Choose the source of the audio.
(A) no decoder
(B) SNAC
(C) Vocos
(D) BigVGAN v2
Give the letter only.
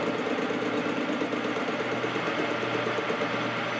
A